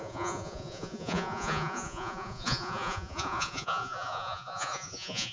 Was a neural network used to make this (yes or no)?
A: yes